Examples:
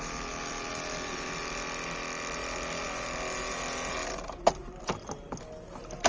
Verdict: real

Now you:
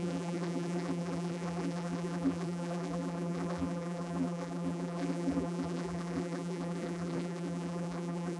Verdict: fake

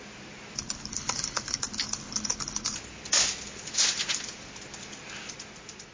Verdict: real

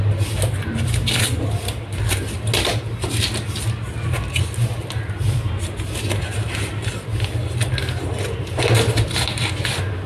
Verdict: real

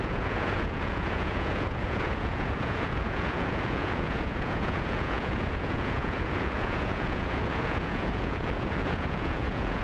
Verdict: fake